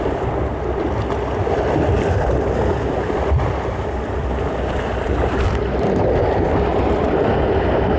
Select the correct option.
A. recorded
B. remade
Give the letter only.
A